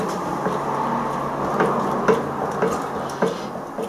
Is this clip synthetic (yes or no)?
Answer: no